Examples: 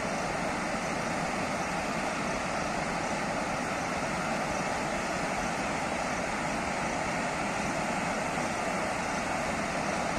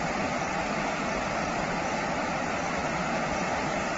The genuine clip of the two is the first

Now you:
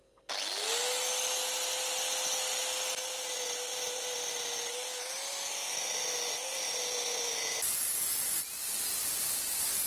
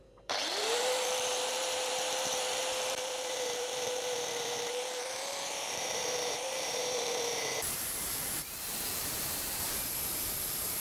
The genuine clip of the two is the first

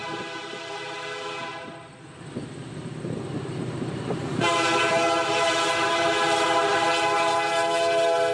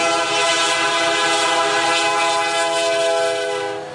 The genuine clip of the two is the second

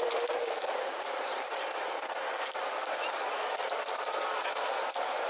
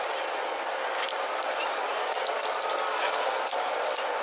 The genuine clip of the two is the second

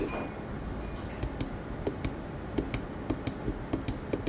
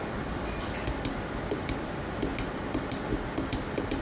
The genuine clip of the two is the first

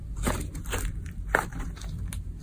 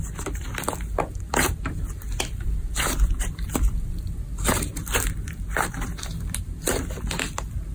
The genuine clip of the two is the first